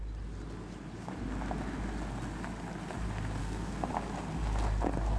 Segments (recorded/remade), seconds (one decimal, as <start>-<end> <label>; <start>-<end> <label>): 0.0-3.4 recorded; 3.4-3.9 remade; 3.9-5.2 recorded